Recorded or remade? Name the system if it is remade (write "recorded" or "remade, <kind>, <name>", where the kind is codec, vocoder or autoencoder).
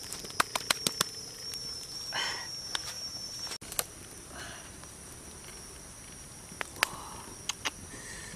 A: recorded